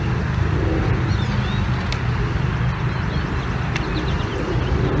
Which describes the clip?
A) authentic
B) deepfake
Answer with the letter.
A